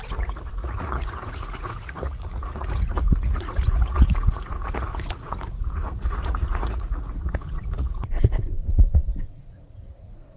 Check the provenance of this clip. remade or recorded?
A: remade